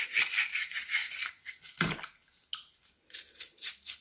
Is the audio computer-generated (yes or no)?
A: no